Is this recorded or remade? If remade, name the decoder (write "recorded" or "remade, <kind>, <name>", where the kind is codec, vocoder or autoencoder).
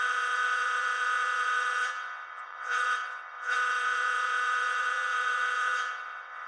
remade, vocoder, WaveNeXt